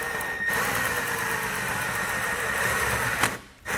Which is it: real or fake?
real